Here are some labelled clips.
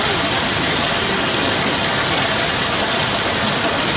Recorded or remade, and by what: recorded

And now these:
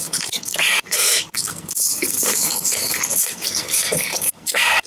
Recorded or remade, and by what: remade, codec, SNAC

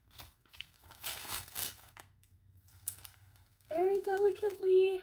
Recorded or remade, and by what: remade, codec, SNAC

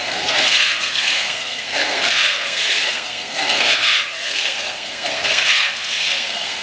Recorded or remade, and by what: remade, codec, SNAC